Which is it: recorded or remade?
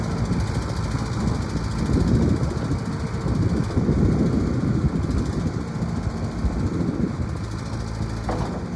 recorded